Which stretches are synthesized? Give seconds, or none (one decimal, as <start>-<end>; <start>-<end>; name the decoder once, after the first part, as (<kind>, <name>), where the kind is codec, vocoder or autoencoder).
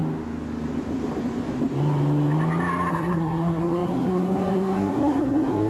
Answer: 2.9-5.7 (codec, SNAC)